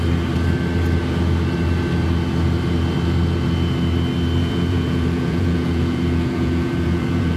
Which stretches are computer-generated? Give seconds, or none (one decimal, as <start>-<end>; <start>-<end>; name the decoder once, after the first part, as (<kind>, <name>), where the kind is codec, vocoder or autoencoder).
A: 4.4-7.4 (vocoder, Vocos)